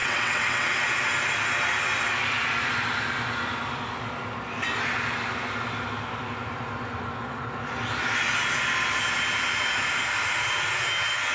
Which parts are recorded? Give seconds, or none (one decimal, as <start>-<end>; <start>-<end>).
0.6-11.3

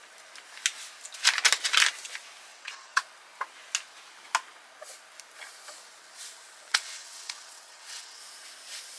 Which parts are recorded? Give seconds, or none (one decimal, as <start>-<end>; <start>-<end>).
0.0-2.5; 3.0-6.7; 8.2-9.0

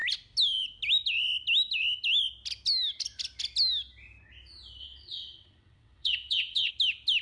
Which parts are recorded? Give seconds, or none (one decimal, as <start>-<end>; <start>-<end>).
0.0-4.8; 6.7-7.2

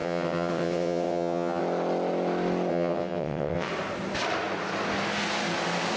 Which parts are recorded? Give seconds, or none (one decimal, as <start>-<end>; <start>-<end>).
1.6-2.7; 3.7-6.0